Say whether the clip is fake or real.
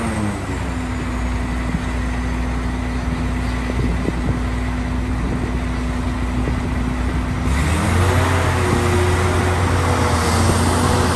real